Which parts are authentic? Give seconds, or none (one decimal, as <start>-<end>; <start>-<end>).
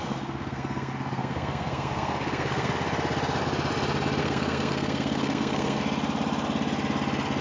2.7-4.2; 5.8-7.4